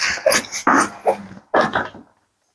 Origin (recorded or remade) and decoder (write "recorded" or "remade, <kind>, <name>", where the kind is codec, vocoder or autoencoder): recorded